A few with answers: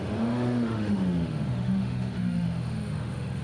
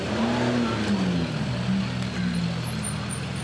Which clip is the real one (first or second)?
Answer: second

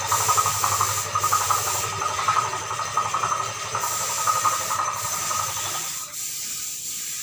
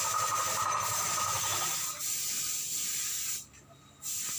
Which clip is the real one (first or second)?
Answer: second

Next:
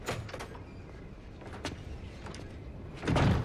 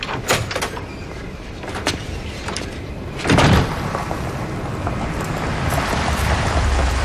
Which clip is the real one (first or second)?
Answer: first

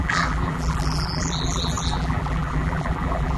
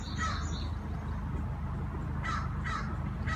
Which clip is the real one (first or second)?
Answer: second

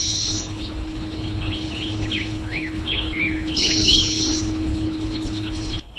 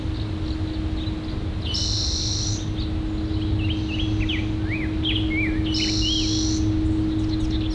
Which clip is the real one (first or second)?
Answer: second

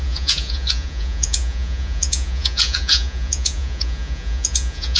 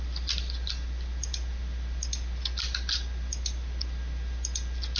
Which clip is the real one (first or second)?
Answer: second